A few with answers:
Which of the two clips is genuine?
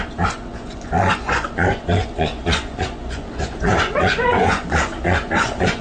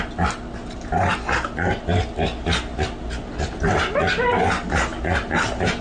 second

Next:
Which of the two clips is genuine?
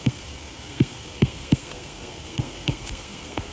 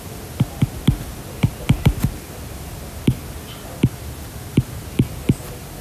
second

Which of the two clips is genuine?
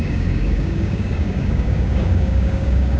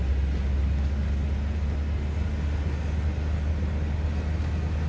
second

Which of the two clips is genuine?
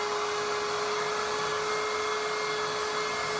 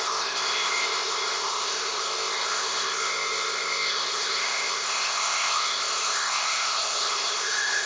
first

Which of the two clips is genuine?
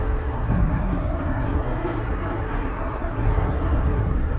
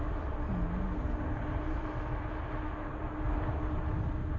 second